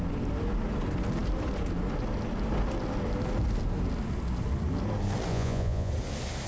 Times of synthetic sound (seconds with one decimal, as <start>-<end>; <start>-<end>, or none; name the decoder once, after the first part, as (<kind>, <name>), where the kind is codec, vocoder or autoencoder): 5.3-5.9 (vocoder, Vocos)